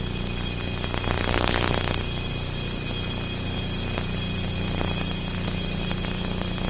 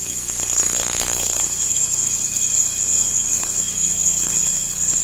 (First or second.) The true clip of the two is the first